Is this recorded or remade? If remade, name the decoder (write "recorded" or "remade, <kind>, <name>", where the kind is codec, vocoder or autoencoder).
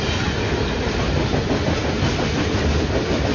recorded